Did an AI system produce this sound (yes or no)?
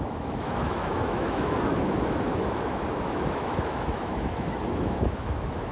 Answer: yes